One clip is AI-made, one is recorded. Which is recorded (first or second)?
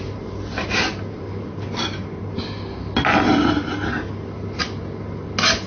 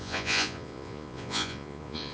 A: first